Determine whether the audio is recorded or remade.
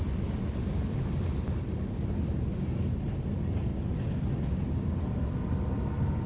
recorded